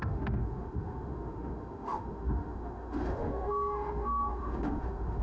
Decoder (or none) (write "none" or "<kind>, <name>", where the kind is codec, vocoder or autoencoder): autoencoder, DAC-VAE